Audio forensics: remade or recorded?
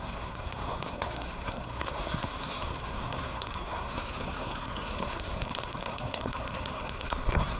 remade